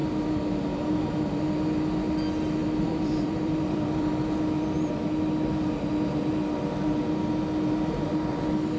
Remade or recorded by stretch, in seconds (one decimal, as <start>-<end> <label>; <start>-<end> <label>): 0.0-2.6 recorded; 2.6-4.1 remade; 4.1-8.8 recorded